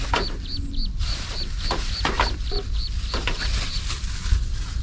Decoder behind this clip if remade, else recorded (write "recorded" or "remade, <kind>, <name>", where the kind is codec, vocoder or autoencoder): recorded